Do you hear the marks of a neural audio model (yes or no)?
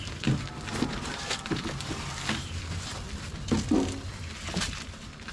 no